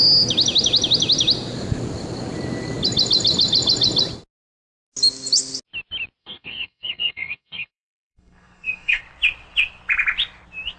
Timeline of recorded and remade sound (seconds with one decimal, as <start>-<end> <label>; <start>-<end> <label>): 0.0-6.2 recorded; 6.2-9.0 remade; 9.0-10.8 recorded